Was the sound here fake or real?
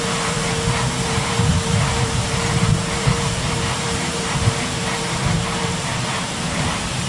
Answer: fake